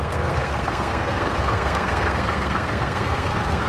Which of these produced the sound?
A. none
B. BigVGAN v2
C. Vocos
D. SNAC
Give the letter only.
D